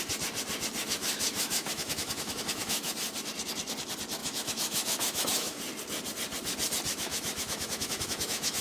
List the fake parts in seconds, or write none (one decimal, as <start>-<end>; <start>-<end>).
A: 0.8-2.9; 4.2-5.6; 6.9-8.6